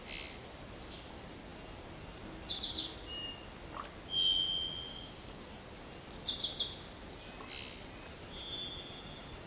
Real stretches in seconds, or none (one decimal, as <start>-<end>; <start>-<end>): 0.0-4.9; 5.6-9.5